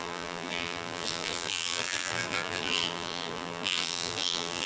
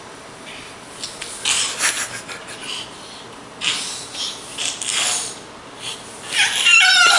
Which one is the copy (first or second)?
first